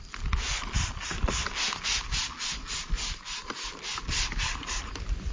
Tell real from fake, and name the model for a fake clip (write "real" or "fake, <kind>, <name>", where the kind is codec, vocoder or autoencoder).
real